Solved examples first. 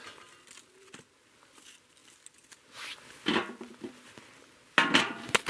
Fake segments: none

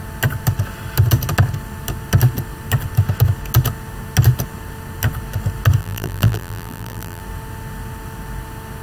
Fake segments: 5.8-7.2 (vocoder, BigVGAN v2)

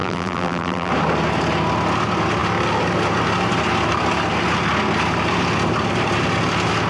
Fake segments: 0.0-0.9 (vocoder, BigVGAN v2)

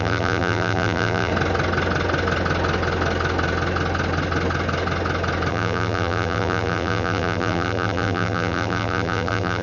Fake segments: 0.0-1.3 (vocoder, BigVGAN v2); 5.5-9.6

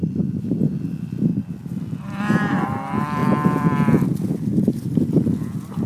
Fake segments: 3.2-4.4 (vocoder, BigVGAN v2)